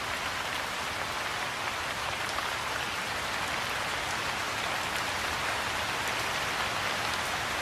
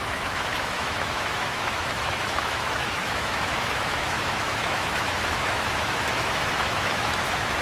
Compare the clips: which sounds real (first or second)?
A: first